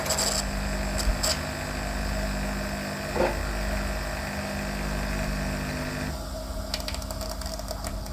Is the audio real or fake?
real